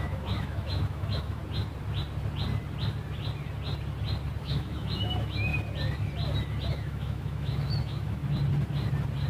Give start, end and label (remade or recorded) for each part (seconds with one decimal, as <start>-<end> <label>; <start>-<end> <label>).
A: 0.0-1.4 remade; 1.4-4.4 recorded; 4.4-5.5 remade; 5.5-6.7 recorded; 6.7-8.2 remade; 8.2-9.3 recorded